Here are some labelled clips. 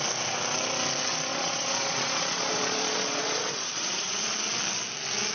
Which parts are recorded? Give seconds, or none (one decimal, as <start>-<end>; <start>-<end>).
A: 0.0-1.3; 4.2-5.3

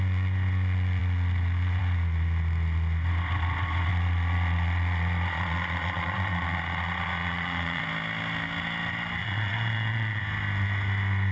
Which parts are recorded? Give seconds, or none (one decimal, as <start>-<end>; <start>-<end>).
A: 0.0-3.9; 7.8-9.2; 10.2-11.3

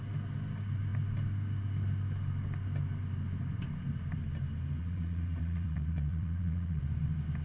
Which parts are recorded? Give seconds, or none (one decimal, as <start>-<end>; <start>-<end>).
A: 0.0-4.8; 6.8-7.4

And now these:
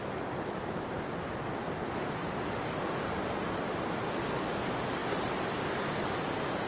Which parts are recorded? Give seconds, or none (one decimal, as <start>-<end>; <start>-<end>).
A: 0.0-6.7

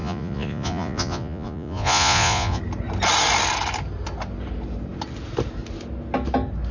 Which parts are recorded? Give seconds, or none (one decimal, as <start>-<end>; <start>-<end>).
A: 2.6-6.7

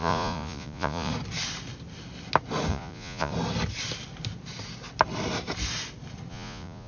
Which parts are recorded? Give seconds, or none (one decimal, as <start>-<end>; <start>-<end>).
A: 1.1-2.7; 3.3-6.3

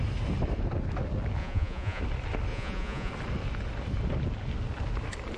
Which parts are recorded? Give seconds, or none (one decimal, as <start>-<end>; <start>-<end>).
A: 0.0-1.4; 2.0-2.5; 3.1-5.4

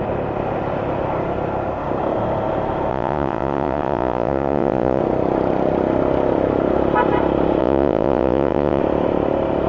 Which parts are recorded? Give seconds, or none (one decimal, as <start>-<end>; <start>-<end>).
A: 0.0-2.9; 5.0-7.6; 8.8-9.7